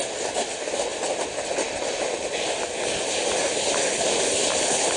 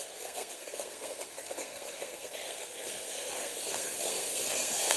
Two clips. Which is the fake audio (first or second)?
second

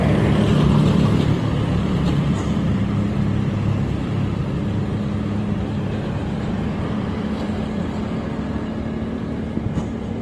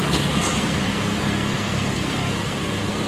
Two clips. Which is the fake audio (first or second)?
second